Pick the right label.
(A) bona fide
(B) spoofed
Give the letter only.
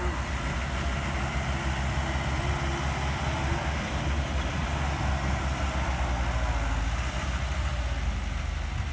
A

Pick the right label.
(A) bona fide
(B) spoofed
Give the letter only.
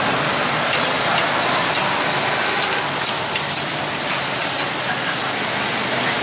A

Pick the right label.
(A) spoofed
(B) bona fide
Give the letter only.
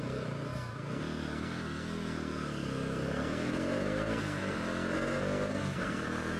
A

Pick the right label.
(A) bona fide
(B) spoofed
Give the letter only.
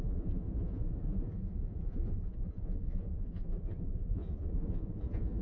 B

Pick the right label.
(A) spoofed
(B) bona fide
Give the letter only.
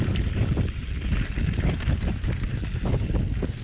B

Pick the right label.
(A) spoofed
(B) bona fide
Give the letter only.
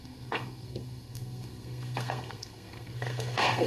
A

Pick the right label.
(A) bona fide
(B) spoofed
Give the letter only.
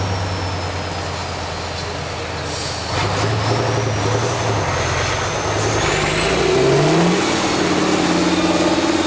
A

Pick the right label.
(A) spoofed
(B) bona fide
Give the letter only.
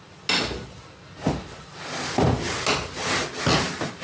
B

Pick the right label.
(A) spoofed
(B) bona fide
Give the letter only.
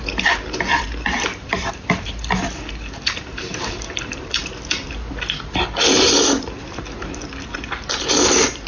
B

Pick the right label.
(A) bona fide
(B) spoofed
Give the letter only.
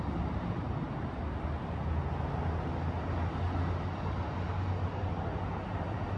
A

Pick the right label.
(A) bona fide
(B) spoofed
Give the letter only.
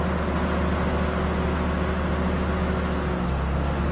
A